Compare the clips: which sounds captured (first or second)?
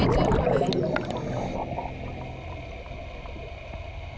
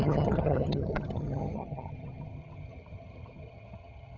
first